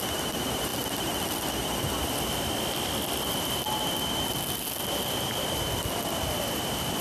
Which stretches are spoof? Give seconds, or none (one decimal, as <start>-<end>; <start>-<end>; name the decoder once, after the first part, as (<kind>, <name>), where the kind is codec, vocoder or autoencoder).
none